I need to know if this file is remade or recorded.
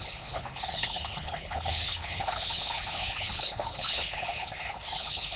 remade